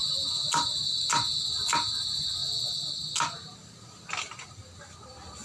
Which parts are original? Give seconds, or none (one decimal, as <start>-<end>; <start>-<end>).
0.0-5.4